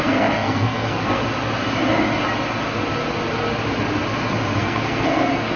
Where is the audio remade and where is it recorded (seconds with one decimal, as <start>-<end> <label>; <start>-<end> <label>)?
0.0-1.2 remade; 1.2-4.6 recorded; 4.6-5.6 remade